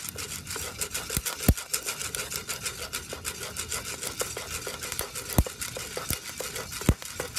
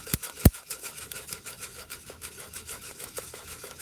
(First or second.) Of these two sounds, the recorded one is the first